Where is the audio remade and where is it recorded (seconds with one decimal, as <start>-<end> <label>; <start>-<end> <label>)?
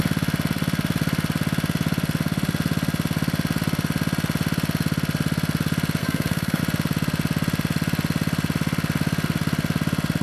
0.0-6.0 recorded; 6.0-6.6 remade; 6.6-10.2 recorded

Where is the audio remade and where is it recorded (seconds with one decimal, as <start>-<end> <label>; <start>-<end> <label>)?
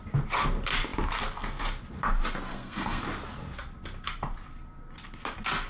0.0-2.5 recorded; 2.5-3.0 remade; 3.0-5.7 recorded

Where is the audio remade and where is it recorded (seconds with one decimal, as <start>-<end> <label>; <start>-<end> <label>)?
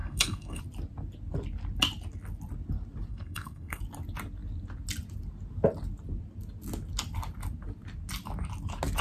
0.0-0.6 remade; 0.6-3.1 recorded; 3.1-3.8 remade; 3.8-9.0 recorded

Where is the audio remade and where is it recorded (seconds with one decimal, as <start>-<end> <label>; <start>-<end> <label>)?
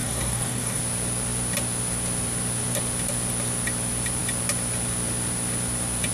0.0-0.8 remade; 0.8-6.1 recorded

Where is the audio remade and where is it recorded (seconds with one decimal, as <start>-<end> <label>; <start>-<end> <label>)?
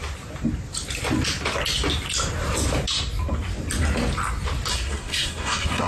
0.0-4.7 recorded; 4.7-5.9 remade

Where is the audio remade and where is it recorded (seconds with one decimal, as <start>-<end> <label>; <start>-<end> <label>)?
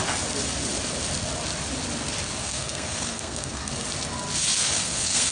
0.0-2.4 recorded; 2.4-3.7 remade; 3.7-4.6 recorded; 4.6-5.3 remade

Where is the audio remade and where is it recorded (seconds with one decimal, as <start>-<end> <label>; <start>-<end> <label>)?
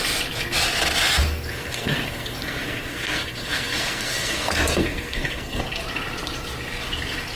0.0-1.2 recorded; 1.2-5.6 remade; 5.6-7.4 recorded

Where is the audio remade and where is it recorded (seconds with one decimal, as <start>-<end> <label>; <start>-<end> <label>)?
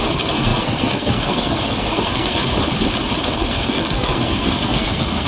0.0-2.4 remade; 2.4-3.3 recorded; 3.3-5.3 remade